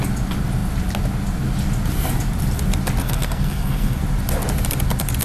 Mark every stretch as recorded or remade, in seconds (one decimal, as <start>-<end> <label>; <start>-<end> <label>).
0.0-3.0 recorded; 3.0-4.0 remade; 4.0-5.2 recorded